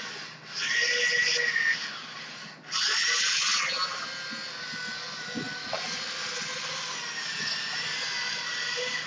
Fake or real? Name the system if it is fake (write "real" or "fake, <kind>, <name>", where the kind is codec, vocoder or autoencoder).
real